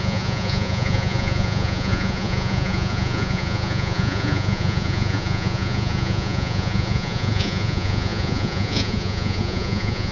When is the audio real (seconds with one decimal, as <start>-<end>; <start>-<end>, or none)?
none